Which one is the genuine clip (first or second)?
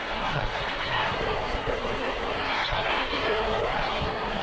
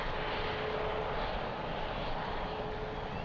second